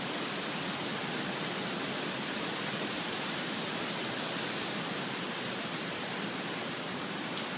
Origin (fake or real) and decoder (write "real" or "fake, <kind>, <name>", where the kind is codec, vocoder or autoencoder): real